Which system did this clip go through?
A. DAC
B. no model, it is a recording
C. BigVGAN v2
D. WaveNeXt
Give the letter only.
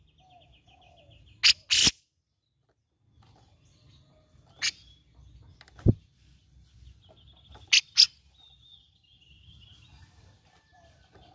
B